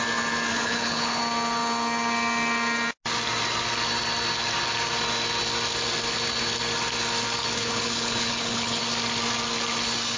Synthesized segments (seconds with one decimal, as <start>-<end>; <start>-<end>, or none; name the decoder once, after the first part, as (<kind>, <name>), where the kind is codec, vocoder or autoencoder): 0.5-1.2 (codec, HILCodec); 7.4-8.8